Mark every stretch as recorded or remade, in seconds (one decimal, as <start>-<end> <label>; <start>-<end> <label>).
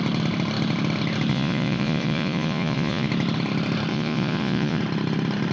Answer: 0.0-1.3 recorded; 1.3-3.1 remade; 3.1-3.9 recorded; 3.9-4.8 remade; 4.8-5.5 recorded